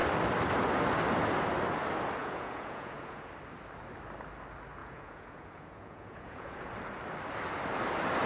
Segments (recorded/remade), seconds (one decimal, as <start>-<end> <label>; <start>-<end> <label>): 0.0-2.2 recorded; 2.2-3.3 remade; 3.3-4.8 recorded; 4.8-6.7 remade; 6.7-8.3 recorded